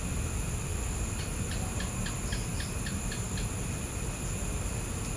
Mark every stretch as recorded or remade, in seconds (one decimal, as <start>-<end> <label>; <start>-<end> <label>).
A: 0.0-0.7 recorded; 0.7-1.9 remade; 1.9-2.5 recorded; 2.5-3.5 remade; 3.5-5.2 recorded